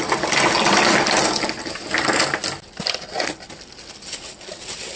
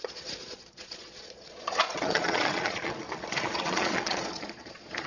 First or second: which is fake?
second